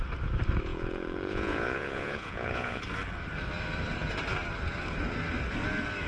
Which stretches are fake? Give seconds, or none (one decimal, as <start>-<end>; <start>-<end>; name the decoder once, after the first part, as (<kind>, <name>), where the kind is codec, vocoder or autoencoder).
0.7-2.8 (vocoder, Vocos)